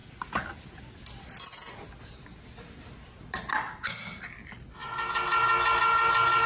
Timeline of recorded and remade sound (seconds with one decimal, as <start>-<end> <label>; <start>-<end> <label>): 0.0-6.5 recorded